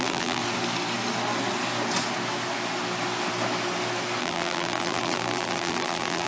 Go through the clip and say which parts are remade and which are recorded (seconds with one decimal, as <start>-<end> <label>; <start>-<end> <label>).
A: 0.0-0.4 remade; 0.4-4.2 recorded; 4.2-6.3 remade